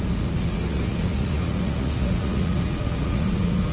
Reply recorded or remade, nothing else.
remade